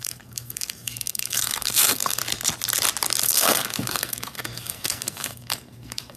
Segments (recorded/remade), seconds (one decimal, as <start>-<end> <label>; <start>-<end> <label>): 0.0-2.2 remade; 2.2-3.2 recorded; 3.2-6.2 remade